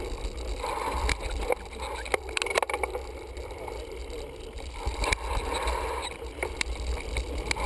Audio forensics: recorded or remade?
recorded